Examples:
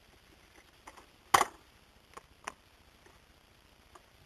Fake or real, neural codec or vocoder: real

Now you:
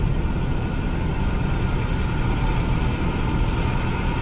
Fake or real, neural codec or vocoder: real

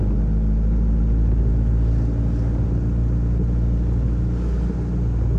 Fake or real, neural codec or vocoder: real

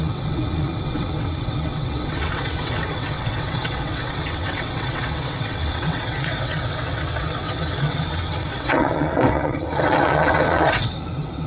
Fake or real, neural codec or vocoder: fake, vocoder, WaveNeXt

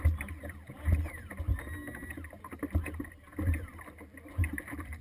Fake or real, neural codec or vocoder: real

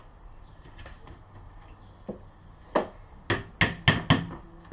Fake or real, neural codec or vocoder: real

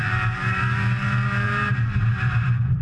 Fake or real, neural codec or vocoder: fake, vocoder, BigVGAN v2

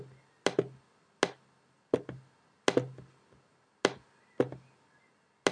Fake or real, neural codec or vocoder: real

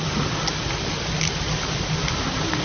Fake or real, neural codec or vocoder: real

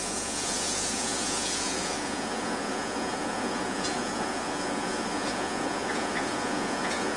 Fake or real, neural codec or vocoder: fake, vocoder, Vocos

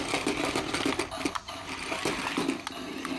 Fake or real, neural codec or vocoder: real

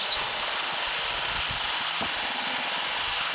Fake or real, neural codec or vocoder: real